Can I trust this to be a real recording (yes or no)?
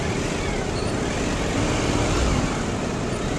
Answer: yes